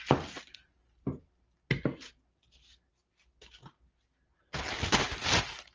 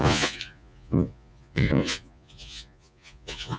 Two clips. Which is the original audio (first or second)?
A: first